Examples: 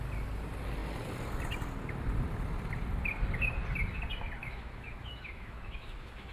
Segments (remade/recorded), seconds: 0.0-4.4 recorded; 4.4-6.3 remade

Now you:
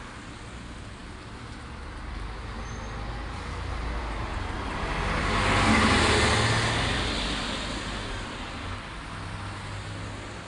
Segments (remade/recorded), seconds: 0.0-5.2 recorded; 5.2-5.8 remade; 5.8-10.5 recorded

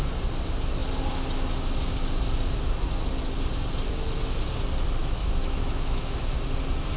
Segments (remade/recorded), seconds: 0.0-5.0 recorded; 5.0-6.2 remade; 6.2-7.0 recorded

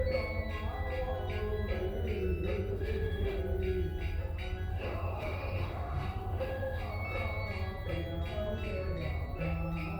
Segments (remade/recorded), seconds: 0.0-2.7 recorded; 2.7-3.4 remade; 3.4-4.7 recorded; 4.7-6.8 remade; 6.8-10.0 recorded

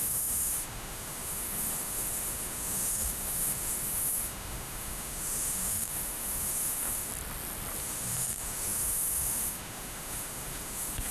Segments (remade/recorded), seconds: 0.0-7.1 remade; 7.1-7.8 recorded; 7.8-11.1 remade

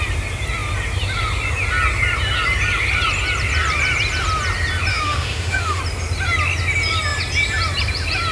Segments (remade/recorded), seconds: 0.0-4.9 recorded; 4.9-5.8 remade; 5.8-8.3 recorded

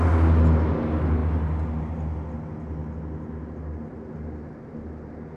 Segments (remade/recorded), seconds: 0.0-5.4 recorded

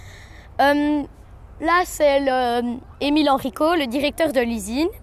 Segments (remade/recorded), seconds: 0.0-5.0 recorded